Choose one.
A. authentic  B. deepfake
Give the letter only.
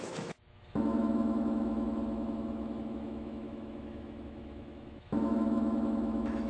B